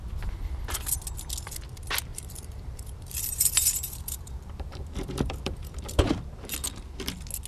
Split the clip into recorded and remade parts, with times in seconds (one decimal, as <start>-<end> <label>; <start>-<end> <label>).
0.0-2.1 recorded; 2.1-6.1 remade; 6.1-7.5 recorded